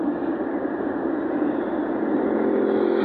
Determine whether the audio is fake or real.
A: real